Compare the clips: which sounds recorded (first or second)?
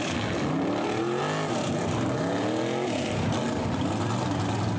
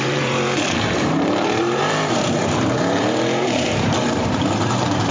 first